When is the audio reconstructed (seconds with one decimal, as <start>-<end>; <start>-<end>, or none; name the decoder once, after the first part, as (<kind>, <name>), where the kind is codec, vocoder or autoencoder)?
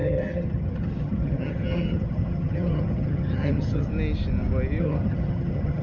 0.0-3.9 (vocoder, HiFi-GAN); 4.8-5.8